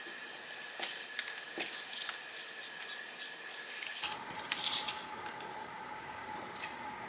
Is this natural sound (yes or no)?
yes